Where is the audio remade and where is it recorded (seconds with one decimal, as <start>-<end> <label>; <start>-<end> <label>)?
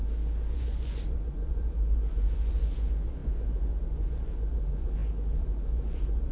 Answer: 0.0-0.5 recorded; 0.5-6.3 remade